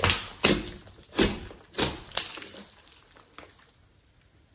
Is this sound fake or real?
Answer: real